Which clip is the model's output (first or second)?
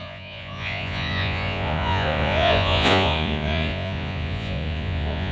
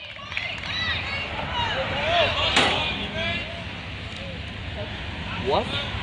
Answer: first